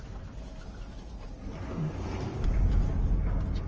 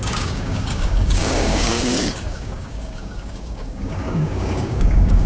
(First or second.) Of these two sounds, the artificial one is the second